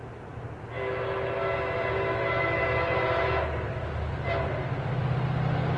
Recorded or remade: recorded